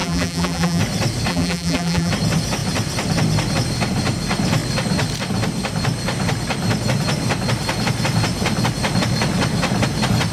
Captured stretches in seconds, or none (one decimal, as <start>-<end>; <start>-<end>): 0.8-1.3; 2.1-10.3